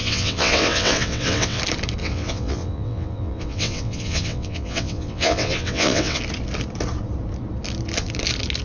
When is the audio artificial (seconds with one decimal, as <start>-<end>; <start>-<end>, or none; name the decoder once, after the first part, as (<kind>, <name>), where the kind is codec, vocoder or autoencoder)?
0.0-1.6 (vocoder, WaveNeXt); 2.0-6.2